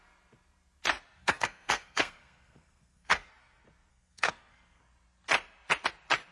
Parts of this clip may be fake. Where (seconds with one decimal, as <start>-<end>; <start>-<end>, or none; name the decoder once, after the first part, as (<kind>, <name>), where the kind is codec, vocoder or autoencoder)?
1.2-3.3 (codec, SNAC); 3.9-4.8